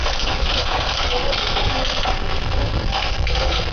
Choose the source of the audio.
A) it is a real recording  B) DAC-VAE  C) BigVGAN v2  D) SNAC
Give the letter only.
D